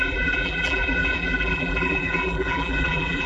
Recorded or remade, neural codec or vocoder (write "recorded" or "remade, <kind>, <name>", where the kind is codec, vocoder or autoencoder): remade, vocoder, BigVGAN v2